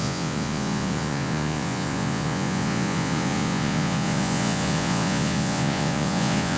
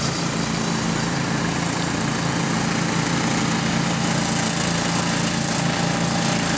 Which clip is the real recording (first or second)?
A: second